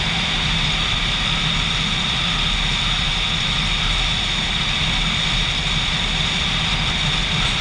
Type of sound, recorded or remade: recorded